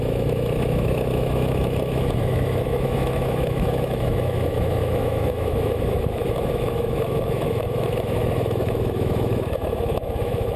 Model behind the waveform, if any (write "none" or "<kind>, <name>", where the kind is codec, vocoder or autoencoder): autoencoder, DAC-VAE